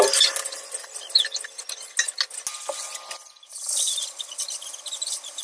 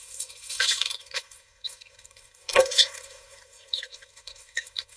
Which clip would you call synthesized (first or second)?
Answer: second